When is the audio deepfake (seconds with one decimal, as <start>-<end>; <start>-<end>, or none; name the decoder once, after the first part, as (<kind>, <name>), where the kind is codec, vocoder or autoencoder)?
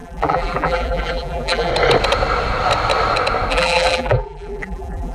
0.0-1.7 (vocoder, BigVGAN v2); 3.5-5.1